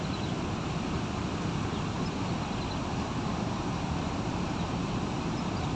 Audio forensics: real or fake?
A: real